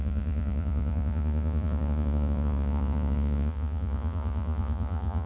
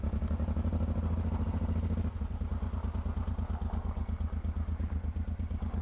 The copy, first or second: first